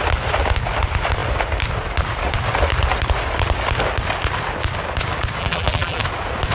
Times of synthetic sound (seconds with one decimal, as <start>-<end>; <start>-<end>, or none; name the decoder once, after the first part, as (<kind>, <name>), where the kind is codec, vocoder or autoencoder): 5.4-6.0 (vocoder, BigVGAN v2)